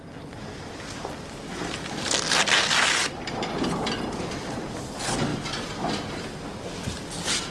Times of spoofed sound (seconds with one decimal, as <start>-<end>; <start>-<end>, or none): none